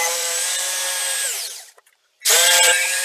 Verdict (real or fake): fake